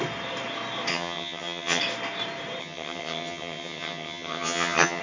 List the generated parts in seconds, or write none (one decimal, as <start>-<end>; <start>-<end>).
0.9-1.8; 2.6-5.0